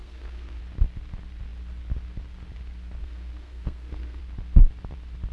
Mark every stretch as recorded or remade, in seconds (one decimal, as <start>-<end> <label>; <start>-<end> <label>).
0.0-0.6 remade; 0.6-3.0 recorded; 3.0-4.2 remade; 4.2-5.3 recorded